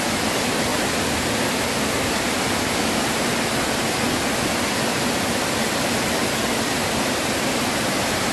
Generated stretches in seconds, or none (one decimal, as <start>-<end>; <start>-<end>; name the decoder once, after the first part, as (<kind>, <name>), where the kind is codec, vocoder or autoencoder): none